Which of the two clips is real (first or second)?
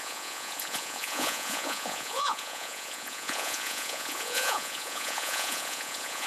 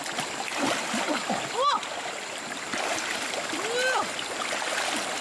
second